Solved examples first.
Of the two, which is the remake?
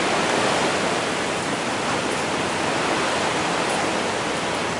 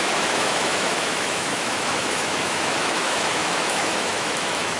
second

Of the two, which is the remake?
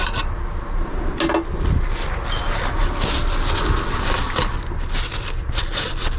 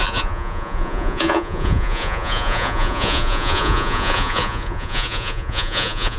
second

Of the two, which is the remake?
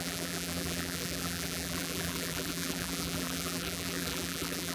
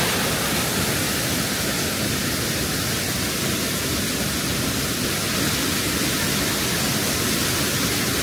first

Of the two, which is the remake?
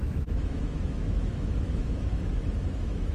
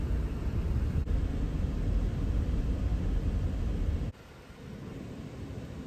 first